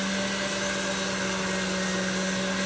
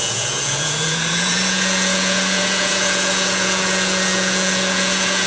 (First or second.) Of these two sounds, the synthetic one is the second